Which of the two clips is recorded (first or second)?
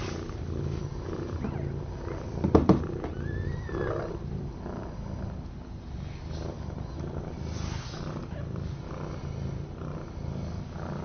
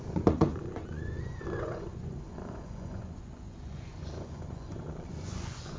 first